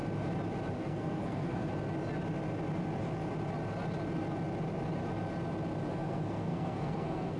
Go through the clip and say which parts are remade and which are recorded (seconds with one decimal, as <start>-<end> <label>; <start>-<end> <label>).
0.0-0.7 recorded; 0.7-1.7 remade; 1.7-5.9 recorded; 5.9-7.4 remade